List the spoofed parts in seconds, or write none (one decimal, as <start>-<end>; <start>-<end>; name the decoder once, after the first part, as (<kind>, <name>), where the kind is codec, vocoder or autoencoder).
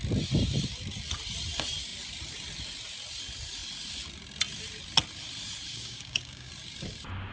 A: 5.7-6.5 (codec, DAC)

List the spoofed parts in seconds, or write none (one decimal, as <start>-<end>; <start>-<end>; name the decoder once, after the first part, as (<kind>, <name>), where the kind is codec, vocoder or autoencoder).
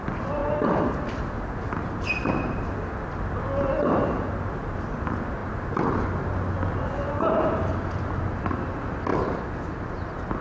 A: none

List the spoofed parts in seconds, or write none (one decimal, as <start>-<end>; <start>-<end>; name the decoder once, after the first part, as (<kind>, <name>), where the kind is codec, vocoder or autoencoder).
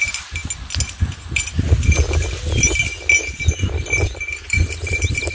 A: 0.0-0.4 (vocoder, BigVGAN v2); 3.6-5.3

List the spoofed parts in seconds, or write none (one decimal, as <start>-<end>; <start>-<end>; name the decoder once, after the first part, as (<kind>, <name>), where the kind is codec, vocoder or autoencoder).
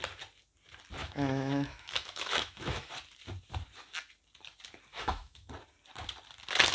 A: 1.0-2.9 (autoencoder, DAC-VAE); 4.9-5.5